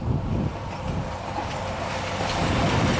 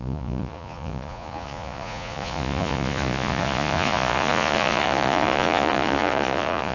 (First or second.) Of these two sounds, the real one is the first